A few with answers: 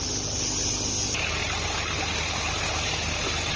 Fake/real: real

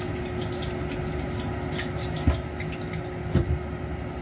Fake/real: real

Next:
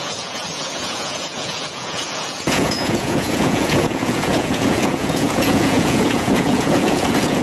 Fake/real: fake